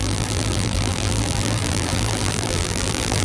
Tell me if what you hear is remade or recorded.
remade